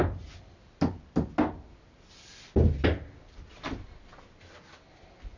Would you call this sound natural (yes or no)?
yes